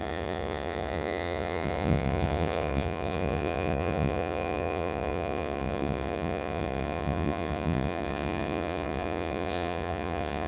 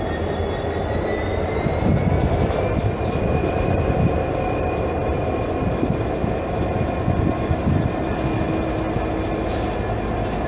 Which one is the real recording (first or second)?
second